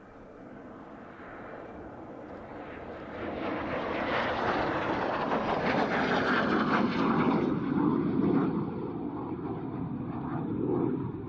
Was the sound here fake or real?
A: real